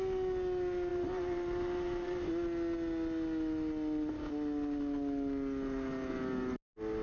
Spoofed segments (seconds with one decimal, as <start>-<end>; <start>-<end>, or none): 0.9-2.3